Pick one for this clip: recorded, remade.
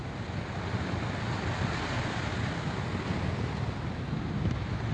recorded